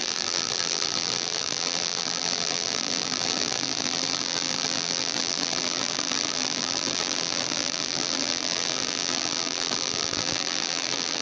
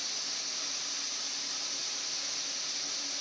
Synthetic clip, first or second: first